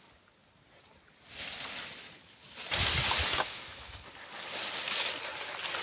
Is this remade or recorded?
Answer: recorded